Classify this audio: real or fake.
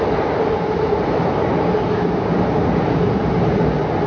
real